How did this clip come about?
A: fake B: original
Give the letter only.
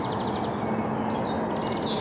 B